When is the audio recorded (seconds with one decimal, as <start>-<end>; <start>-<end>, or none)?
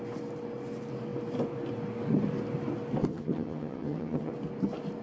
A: 0.0-3.1; 4.3-5.0